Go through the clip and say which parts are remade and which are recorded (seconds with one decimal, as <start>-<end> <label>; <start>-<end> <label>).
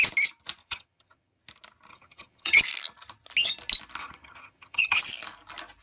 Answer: 0.0-0.6 recorded; 0.6-1.4 remade; 1.4-1.9 recorded; 1.9-2.6 remade; 2.6-4.0 recorded; 4.0-5.0 remade; 5.0-5.8 recorded